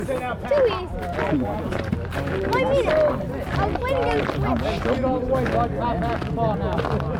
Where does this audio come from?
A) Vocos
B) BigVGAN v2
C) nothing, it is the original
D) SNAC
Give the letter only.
C